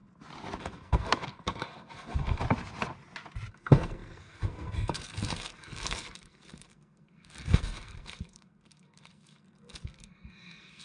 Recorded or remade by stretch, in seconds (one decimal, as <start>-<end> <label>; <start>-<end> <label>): 0.0-0.6 recorded; 0.6-2.4 remade; 2.4-3.5 recorded; 3.5-10.8 remade